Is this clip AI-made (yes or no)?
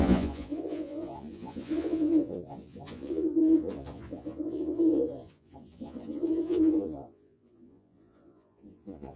yes